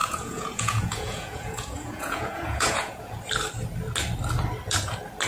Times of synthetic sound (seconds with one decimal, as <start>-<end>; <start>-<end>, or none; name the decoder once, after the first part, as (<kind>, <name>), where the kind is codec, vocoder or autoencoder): 0.0-3.2 (vocoder, Vocos)